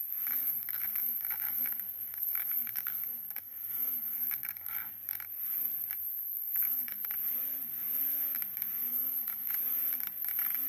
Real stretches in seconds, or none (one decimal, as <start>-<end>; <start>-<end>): 0.0-0.4; 4.9-6.3; 7.0-8.9; 9.5-10.7